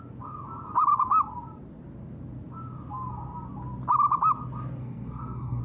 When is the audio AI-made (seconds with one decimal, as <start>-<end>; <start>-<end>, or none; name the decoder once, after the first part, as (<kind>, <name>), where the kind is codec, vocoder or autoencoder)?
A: 4.8-5.6 (codec, SNAC)